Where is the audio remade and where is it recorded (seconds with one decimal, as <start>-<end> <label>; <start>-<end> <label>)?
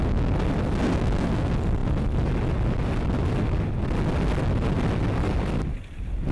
0.0-6.3 recorded